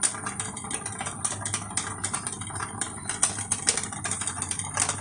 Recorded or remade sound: recorded